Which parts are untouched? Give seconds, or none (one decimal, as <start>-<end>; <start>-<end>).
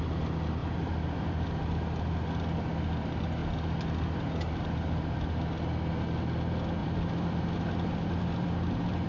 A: 0.0-0.6; 1.6-6.8